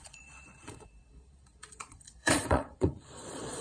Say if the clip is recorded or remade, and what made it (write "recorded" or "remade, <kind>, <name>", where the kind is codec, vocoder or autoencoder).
remade, vocoder, Vocos